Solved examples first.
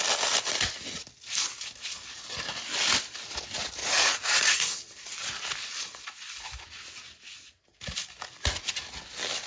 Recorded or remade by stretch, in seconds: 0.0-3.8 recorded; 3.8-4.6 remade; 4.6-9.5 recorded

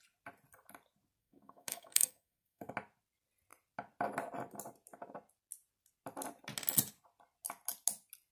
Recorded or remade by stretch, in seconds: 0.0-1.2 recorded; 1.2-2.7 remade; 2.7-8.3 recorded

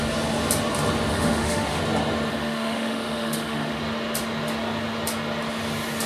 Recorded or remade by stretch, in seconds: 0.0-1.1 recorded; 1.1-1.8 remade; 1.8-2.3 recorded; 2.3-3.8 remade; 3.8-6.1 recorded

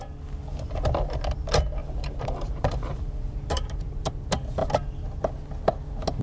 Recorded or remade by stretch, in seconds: 0.0-1.8 recorded; 1.8-4.1 remade; 4.1-6.2 recorded

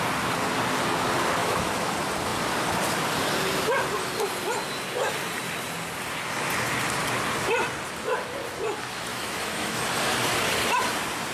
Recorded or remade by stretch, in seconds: 0.0-1.4 recorded; 1.4-1.9 remade; 1.9-9.1 recorded; 9.1-9.8 remade; 9.8-11.3 recorded